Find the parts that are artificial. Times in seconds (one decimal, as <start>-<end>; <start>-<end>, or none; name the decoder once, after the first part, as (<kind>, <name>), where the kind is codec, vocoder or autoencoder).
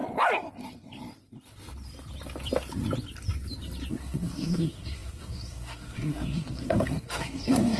3.9-7.8 (codec, SNAC)